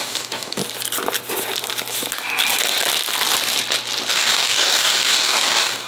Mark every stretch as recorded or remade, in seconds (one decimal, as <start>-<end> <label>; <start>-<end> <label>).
0.0-0.6 remade; 0.6-4.1 recorded; 4.1-5.9 remade